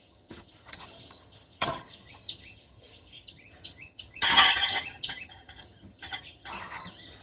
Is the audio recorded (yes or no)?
no